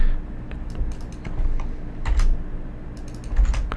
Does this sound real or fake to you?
real